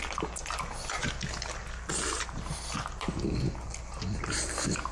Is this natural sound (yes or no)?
yes